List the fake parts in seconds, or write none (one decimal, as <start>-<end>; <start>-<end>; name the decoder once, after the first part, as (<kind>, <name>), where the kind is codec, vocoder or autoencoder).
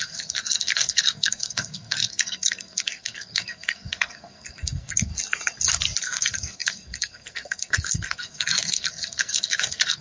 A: 0.0-5.1 (codec, SNAC); 6.0-10.0